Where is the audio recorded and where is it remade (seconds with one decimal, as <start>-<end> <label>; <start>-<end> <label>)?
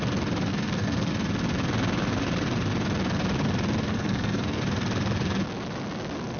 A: 0.0-0.5 recorded; 0.5-1.1 remade; 1.1-3.9 recorded; 3.9-4.6 remade; 4.6-6.4 recorded